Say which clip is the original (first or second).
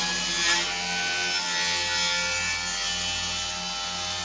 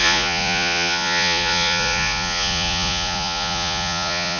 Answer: first